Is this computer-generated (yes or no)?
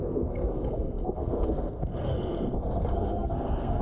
yes